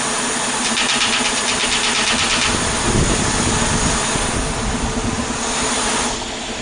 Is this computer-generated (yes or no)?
no